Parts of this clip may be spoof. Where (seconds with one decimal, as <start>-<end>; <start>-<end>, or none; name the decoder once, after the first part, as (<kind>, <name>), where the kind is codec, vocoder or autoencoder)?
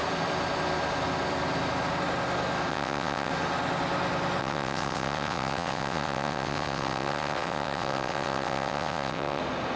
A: 2.7-3.3 (vocoder, WaveNeXt); 4.4-9.4